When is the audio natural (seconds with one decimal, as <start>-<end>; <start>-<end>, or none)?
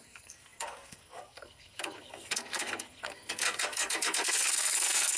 none